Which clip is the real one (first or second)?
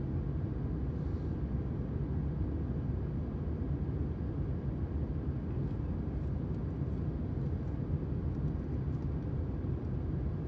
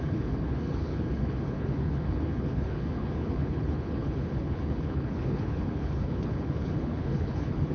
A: first